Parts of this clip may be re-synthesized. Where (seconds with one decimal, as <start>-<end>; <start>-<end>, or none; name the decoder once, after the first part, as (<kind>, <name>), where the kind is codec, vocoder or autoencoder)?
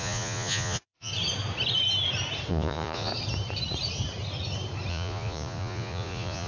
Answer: 0.0-1.1 (vocoder, Vocos); 2.5-3.1; 4.9-6.5